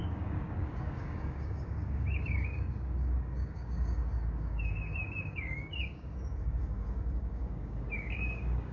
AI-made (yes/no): yes